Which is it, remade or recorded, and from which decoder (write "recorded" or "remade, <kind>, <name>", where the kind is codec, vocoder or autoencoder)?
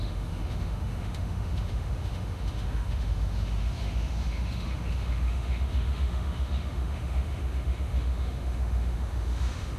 remade, autoencoder, DAC-VAE